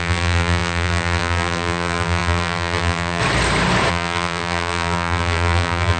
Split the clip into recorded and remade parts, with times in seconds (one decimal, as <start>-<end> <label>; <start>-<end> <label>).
0.0-3.2 remade; 3.2-3.9 recorded; 3.9-6.0 remade